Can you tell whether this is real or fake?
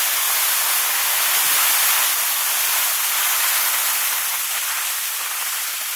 real